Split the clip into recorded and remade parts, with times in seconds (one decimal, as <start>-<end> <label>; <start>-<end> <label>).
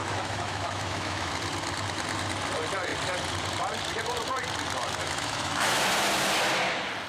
0.0-1.3 remade; 1.3-5.0 recorded; 5.0-5.7 remade; 5.7-7.1 recorded